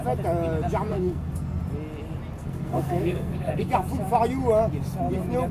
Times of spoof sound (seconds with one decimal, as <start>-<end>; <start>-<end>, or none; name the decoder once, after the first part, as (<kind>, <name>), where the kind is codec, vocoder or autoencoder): 0.9-1.6 (codec, SNAC); 2.4-3.7